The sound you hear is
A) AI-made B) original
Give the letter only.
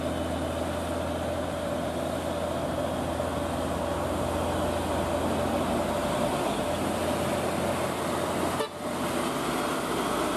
B